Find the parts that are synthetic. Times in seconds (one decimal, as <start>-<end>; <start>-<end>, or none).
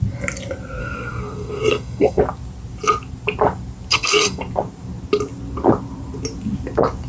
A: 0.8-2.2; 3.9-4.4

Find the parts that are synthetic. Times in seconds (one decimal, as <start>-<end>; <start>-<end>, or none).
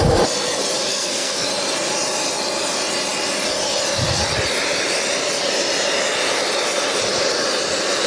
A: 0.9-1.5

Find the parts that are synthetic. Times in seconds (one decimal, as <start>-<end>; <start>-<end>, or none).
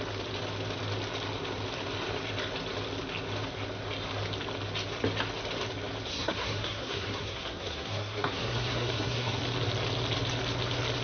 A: 6.1-9.4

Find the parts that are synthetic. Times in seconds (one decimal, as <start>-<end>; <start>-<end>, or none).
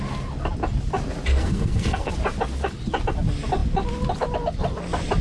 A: 1.3-2.1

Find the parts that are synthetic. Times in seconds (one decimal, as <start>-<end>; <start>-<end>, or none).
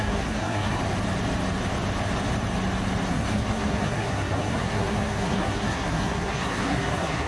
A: 0.0-0.8; 3.1-7.3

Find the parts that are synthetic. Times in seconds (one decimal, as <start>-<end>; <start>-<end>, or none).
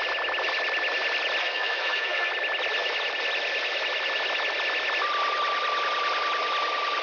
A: 1.4-2.3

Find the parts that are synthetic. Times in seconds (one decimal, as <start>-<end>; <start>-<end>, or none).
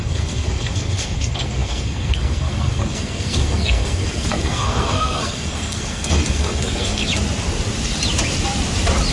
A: 0.0-7.1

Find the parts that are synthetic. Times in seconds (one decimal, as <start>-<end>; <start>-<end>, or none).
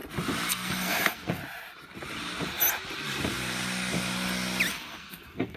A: 0.5-1.4; 4.7-5.6